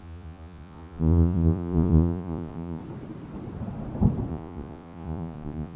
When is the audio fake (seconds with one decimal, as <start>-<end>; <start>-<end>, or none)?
0.0-2.8; 4.3-5.8